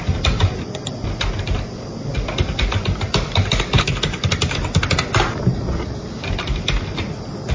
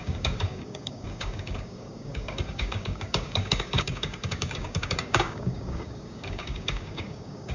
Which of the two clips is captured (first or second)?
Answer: first